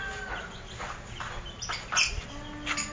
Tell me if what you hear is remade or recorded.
recorded